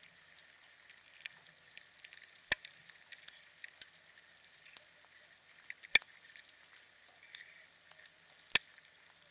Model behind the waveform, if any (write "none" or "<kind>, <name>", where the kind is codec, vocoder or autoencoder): none